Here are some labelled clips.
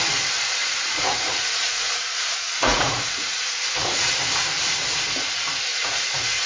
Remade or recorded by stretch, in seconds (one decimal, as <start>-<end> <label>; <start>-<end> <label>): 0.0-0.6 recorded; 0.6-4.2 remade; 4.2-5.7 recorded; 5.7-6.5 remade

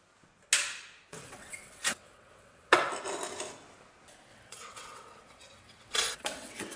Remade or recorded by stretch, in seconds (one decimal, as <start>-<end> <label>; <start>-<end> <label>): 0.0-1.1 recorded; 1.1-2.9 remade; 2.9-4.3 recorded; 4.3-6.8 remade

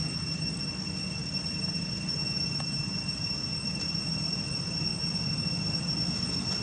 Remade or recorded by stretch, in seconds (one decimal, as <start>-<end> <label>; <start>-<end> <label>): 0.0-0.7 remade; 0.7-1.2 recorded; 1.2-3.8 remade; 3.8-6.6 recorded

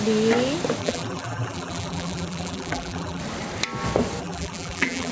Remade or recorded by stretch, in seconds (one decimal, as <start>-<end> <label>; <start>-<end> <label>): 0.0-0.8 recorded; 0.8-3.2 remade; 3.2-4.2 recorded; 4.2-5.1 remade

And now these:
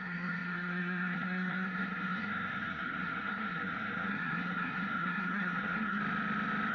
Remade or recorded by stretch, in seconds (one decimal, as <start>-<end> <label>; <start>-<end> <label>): 0.0-6.0 remade; 6.0-6.7 recorded